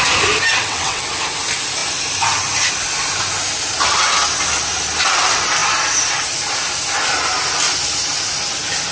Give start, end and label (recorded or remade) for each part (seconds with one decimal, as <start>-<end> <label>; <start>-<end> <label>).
0.0-0.5 recorded; 0.5-1.1 remade; 1.1-8.9 recorded